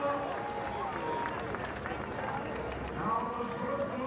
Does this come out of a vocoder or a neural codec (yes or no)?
no